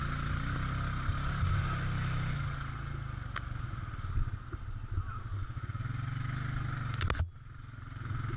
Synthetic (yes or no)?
no